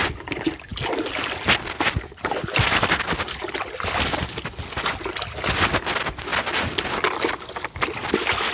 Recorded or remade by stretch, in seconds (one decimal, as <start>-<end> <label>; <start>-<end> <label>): 0.0-8.5 recorded